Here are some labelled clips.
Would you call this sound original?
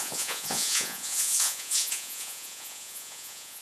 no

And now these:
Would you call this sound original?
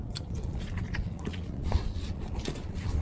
no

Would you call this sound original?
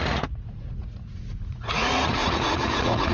no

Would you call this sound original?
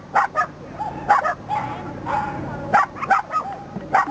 yes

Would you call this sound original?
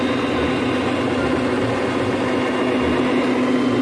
yes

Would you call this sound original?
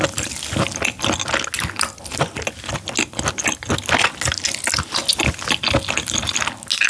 yes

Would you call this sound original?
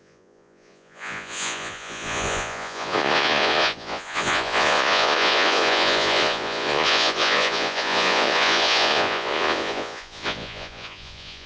no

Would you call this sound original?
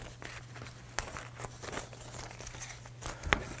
yes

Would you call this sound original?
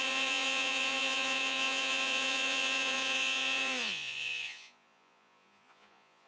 no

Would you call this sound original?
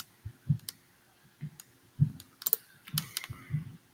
yes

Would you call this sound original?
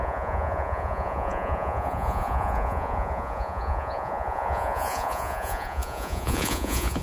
no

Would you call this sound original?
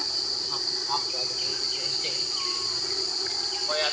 yes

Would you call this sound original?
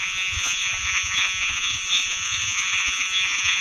no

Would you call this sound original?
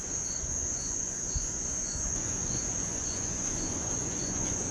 no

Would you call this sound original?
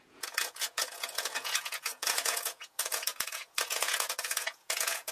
no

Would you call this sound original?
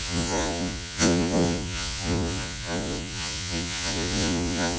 no